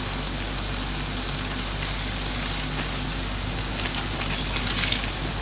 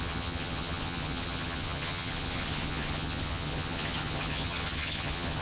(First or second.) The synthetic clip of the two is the second